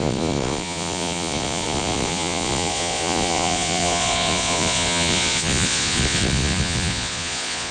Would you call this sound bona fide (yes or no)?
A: no